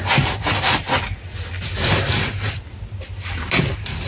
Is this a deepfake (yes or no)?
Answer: no